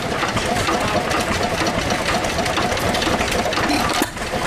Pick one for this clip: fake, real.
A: real